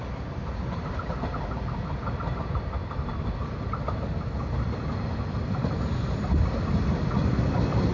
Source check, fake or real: real